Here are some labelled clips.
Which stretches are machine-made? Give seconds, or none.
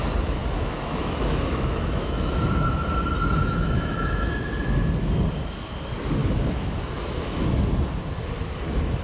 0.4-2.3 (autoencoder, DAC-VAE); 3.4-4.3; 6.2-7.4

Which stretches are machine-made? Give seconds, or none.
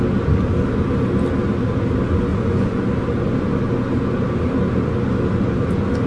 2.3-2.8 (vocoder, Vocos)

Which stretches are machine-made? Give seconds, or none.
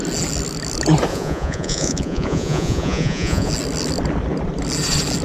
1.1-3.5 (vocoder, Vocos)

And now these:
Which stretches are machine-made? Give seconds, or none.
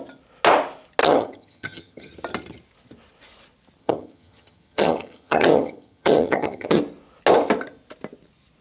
1.0-2.1 (vocoder, HiFi-GAN); 3.8-6.8